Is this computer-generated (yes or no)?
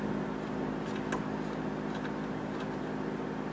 no